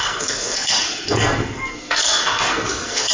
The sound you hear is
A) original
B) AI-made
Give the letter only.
B